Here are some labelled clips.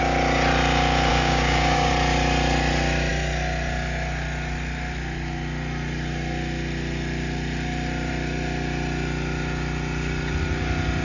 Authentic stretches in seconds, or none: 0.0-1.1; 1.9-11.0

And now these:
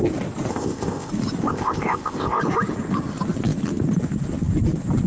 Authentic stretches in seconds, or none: 0.0-0.5; 1.1-1.5; 2.4-5.1

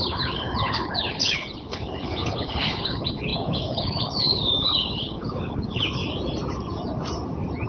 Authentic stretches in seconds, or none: 6.0-7.7

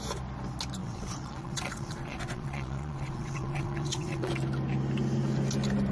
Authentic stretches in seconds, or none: 0.0-0.8; 4.3-5.9

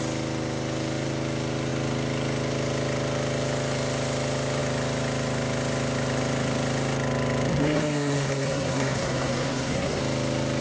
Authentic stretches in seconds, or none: 0.0-7.5; 10.0-10.6